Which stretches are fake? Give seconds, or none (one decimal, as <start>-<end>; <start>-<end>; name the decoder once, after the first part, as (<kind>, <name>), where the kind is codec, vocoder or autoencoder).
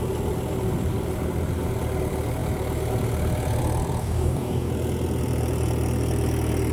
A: 4.0-4.7 (codec, DAC)